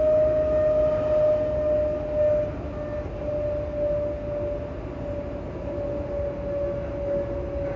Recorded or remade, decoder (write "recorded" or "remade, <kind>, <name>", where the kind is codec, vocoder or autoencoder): recorded